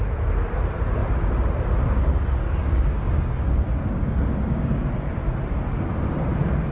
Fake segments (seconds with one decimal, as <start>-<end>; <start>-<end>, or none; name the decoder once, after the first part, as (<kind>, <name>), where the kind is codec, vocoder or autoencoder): 2.4-4.9 (codec, DAC)